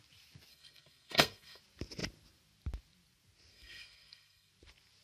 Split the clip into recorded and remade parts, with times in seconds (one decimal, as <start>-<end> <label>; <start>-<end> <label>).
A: 0.0-0.5 recorded; 0.5-1.6 remade; 1.6-3.5 recorded; 3.5-4.5 remade; 4.5-5.0 recorded